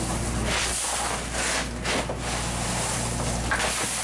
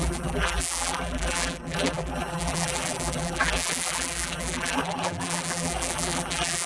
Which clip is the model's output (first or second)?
second